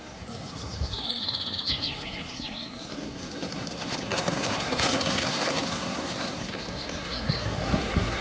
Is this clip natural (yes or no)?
no